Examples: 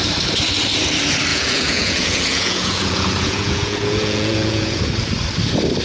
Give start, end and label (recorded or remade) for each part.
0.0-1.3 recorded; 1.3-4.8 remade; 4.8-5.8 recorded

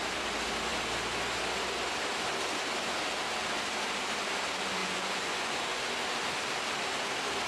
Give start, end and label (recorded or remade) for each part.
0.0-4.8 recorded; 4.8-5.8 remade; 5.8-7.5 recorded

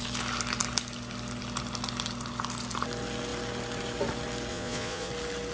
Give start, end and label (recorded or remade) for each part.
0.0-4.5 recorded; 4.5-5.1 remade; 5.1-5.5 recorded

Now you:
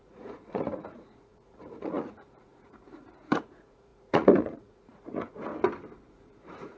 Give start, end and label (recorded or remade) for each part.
0.0-5.5 remade; 5.5-6.1 recorded; 6.1-6.8 remade

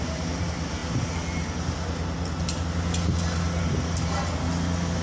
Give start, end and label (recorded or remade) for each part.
0.0-5.0 recorded

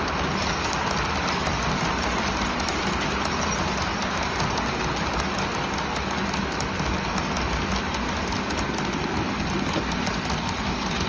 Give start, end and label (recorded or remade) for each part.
0.0-11.1 recorded